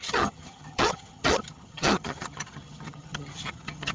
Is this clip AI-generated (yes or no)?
yes